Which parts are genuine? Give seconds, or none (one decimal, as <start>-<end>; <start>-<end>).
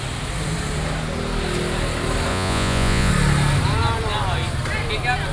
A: 0.0-2.3; 3.1-5.3